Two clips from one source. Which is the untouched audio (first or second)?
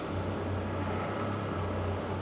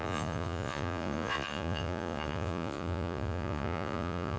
first